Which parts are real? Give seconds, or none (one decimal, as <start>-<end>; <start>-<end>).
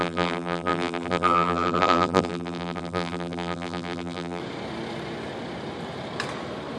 4.4-6.8